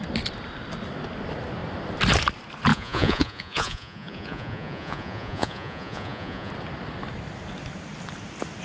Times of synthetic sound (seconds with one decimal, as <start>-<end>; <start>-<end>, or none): 2.7-6.5